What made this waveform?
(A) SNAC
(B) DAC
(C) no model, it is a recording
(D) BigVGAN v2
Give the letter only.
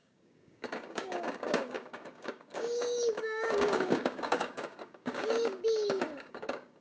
B